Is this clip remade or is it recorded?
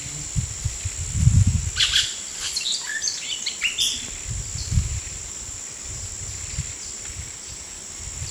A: recorded